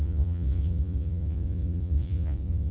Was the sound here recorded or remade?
remade